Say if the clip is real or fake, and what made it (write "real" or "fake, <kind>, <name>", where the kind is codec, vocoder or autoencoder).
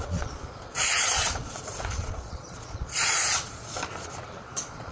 fake, vocoder, Vocos